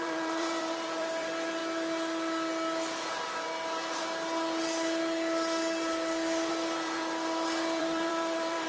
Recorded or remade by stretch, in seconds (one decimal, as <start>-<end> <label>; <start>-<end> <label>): 0.0-1.6 remade; 1.6-6.5 recorded; 6.5-7.0 remade; 7.0-7.8 recorded; 7.8-8.7 remade